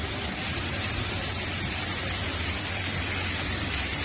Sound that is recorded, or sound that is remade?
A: remade